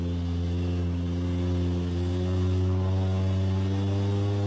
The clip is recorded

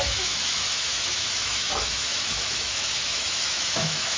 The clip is remade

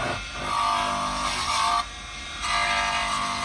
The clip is recorded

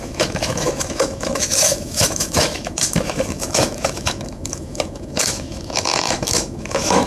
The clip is remade